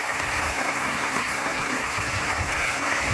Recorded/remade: remade